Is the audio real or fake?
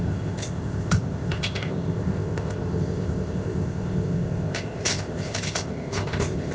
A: fake